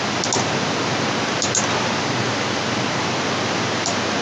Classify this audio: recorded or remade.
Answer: recorded